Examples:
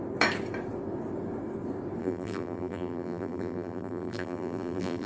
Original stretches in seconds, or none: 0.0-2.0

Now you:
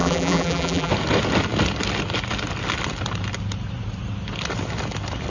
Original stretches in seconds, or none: 0.9-5.3

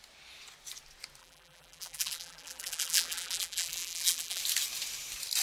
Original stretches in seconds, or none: 0.0-1.2; 4.4-5.4

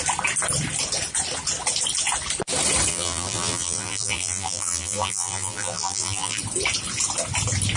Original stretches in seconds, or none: 0.0-2.9; 6.4-7.8

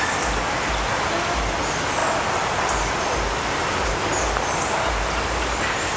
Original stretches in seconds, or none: 0.0-6.0